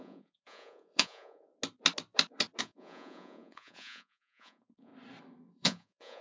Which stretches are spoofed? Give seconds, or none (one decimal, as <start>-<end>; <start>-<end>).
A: 0.0-1.5; 2.6-4.9; 5.5-6.2